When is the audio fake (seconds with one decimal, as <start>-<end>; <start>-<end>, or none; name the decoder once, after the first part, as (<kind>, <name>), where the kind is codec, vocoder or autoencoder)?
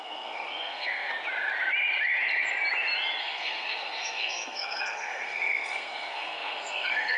0.0-1.1 (codec, SNAC); 3.2-7.2